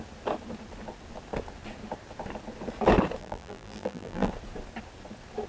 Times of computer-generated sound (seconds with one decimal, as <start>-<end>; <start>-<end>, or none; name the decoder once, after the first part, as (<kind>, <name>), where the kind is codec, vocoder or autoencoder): 3.2-4.3 (vocoder, BigVGAN v2)

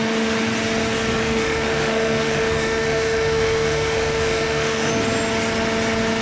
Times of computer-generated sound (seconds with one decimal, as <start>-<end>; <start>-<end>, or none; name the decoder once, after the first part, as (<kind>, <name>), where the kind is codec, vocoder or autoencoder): 1.2-4.9 (autoencoder, DAC-VAE)

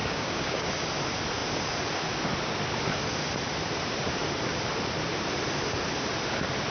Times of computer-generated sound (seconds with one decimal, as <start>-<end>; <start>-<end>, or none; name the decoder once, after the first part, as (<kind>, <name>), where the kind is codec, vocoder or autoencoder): 0.0-0.7 (codec, DAC)

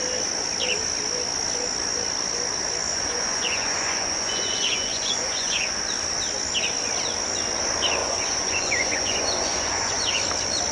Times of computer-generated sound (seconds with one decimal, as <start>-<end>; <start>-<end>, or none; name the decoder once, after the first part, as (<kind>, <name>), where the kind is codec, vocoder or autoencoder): 2.9-5.8 (vocoder, Vocos); 8.0-10.0